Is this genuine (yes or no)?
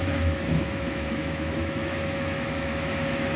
no